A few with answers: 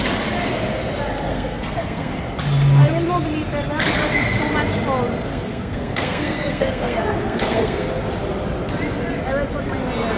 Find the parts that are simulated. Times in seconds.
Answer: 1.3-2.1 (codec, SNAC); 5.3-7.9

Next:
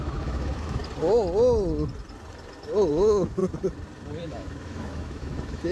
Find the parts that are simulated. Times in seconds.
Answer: 0.0-0.8 (autoencoder, DAC-VAE); 2.9-3.4; 4.2-5.7